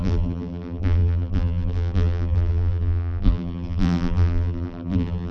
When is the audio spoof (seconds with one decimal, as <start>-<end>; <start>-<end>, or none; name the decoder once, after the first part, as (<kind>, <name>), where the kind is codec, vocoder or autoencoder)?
0.0-5.3 (vocoder, BigVGAN v2)